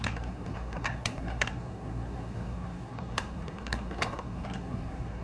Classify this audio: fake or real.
fake